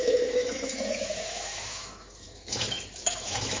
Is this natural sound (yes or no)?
no